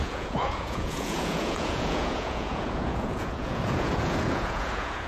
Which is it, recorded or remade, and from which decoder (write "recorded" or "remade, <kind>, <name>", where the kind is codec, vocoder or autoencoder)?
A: remade, vocoder, Vocos